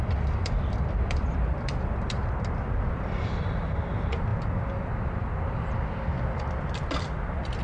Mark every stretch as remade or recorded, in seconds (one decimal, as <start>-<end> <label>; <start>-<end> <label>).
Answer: 0.0-2.2 remade; 2.2-2.9 recorded; 2.9-4.3 remade; 4.3-6.6 recorded; 6.6-7.6 remade

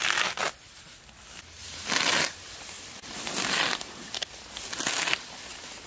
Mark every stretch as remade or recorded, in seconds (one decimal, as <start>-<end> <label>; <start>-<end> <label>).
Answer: 0.0-1.6 recorded; 1.6-5.1 remade; 5.1-5.9 recorded

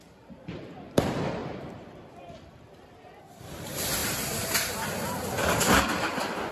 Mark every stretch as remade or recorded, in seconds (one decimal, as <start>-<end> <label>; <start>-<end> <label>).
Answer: 0.0-6.5 remade

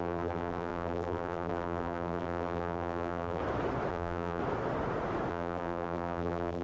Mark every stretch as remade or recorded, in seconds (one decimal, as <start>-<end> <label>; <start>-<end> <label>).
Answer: 0.0-3.4 remade; 3.4-3.9 recorded; 3.9-4.4 remade; 4.4-5.3 recorded; 5.3-6.6 remade

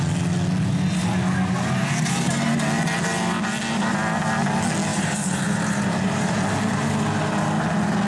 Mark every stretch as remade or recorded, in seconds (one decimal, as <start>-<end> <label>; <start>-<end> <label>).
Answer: 0.0-1.8 recorded; 1.8-2.5 remade; 2.5-4.9 recorded; 4.9-6.4 remade; 6.4-8.1 recorded

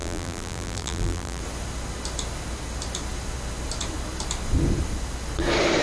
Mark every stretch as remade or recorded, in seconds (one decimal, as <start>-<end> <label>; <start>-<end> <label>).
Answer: 0.0-1.4 remade; 1.4-5.8 recorded

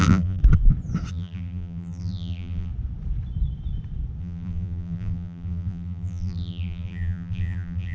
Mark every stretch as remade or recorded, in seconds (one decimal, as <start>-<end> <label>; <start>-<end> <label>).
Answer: 0.0-0.4 remade; 0.4-1.1 recorded; 1.1-2.7 remade; 2.7-4.2 recorded; 4.2-7.9 remade

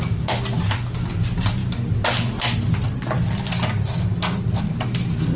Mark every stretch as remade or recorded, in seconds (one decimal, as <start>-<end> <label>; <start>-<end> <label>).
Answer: 0.0-5.4 recorded